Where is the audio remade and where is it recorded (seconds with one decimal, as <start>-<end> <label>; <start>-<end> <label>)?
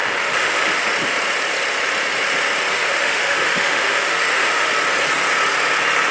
0.0-0.9 remade; 0.9-2.7 recorded; 2.7-4.7 remade; 4.7-6.1 recorded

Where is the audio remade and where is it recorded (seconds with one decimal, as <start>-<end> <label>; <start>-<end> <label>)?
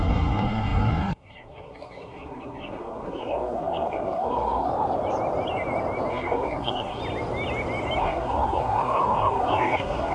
0.0-4.7 remade; 4.7-6.1 recorded; 6.1-7.0 remade; 7.0-8.0 recorded; 8.0-10.1 remade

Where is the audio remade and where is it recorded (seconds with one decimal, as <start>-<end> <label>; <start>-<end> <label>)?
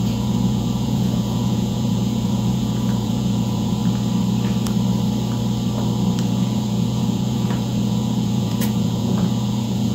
0.0-3.8 remade; 3.8-6.2 recorded; 6.2-9.9 remade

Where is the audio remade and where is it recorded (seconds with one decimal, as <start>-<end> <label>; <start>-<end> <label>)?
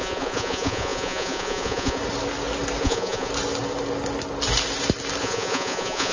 0.0-2.0 remade; 2.0-2.8 recorded; 2.8-3.3 remade; 3.3-5.2 recorded; 5.2-6.1 remade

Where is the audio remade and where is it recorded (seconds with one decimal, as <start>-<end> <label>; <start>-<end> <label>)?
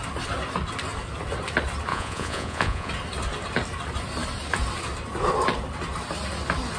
0.0-1.9 recorded; 1.9-2.9 remade; 2.9-6.8 recorded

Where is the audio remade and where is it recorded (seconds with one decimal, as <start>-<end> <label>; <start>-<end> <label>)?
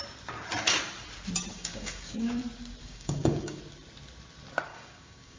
0.0-1.5 recorded; 1.5-2.4 remade; 2.4-2.8 recorded; 2.8-3.6 remade; 3.6-4.7 recorded; 4.7-5.4 remade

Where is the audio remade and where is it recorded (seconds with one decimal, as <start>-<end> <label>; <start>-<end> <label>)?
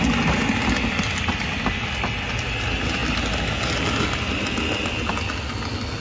0.0-6.0 recorded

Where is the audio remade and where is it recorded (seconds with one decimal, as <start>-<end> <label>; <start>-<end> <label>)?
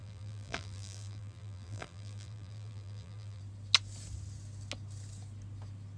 0.0-3.4 remade; 3.4-6.0 recorded